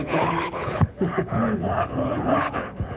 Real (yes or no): no